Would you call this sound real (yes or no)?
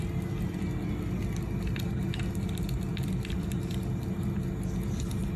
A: yes